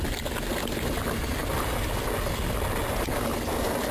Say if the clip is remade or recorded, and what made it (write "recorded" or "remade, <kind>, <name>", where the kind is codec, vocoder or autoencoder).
recorded